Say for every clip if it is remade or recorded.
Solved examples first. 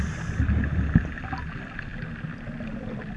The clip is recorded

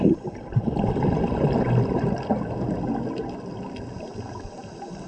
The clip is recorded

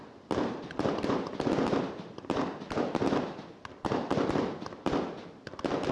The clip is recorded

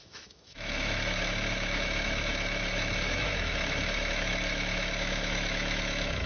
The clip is remade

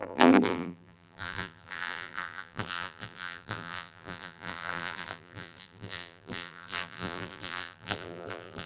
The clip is remade